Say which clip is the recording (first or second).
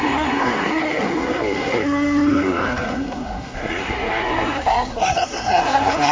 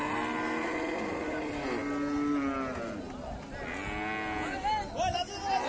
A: second